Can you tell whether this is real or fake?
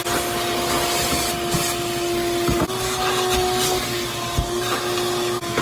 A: real